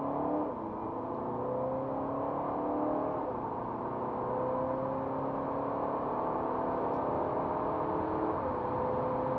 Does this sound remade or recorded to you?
recorded